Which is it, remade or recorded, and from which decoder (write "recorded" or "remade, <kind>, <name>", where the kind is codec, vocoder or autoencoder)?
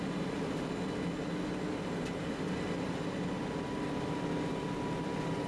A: recorded